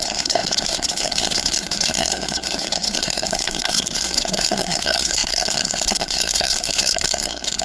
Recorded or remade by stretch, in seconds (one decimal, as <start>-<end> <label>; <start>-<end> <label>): 0.0-7.6 remade